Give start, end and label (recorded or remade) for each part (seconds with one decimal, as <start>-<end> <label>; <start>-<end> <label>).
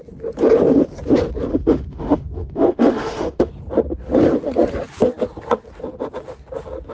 0.0-1.5 recorded; 1.5-3.5 remade; 3.5-6.9 recorded